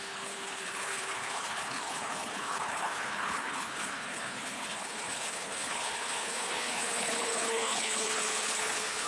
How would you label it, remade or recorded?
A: remade